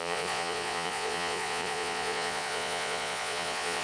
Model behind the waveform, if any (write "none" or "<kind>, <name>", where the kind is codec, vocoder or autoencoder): vocoder, Vocos